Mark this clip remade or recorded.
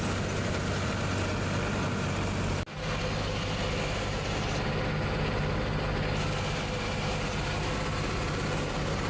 recorded